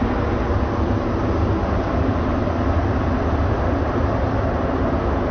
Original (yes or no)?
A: yes